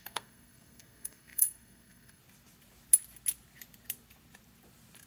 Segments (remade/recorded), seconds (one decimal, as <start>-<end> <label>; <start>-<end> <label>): 0.0-2.2 remade; 2.2-5.1 recorded